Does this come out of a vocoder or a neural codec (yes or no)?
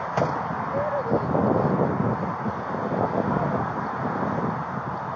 no